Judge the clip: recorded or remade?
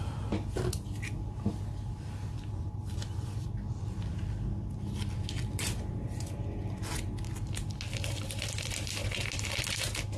recorded